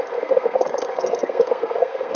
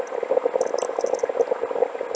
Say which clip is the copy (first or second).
first